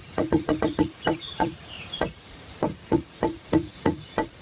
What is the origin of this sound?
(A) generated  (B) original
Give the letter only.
A